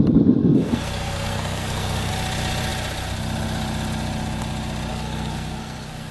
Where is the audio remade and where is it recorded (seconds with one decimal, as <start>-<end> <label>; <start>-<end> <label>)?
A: 0.0-0.4 recorded; 0.4-2.1 remade; 2.1-4.9 recorded; 4.9-6.1 remade